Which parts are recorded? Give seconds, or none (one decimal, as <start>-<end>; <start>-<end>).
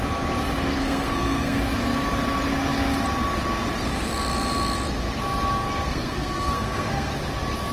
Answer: 0.0-0.8; 1.6-5.9; 7.1-7.7